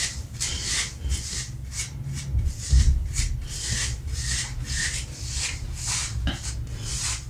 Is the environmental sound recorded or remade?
recorded